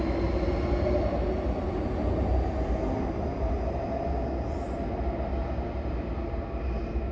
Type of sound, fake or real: real